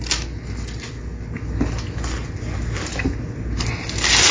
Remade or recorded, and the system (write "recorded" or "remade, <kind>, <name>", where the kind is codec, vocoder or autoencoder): recorded